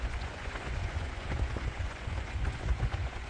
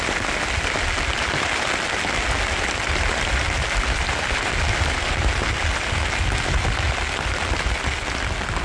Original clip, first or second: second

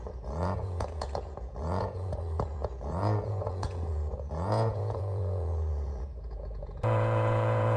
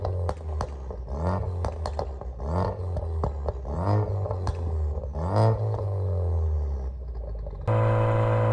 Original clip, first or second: second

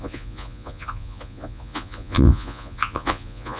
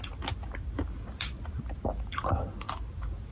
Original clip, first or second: second